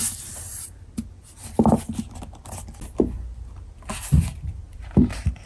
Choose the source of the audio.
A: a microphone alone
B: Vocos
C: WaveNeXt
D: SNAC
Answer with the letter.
A